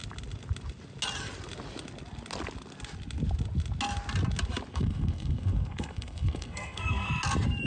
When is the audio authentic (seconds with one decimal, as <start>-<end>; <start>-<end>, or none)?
0.0-4.7; 7.1-7.7